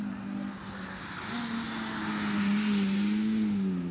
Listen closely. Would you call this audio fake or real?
real